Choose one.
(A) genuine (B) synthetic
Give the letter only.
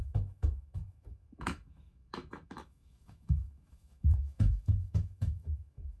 B